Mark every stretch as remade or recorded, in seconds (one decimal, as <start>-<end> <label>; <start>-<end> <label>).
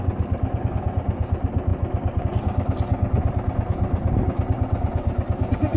0.0-5.8 recorded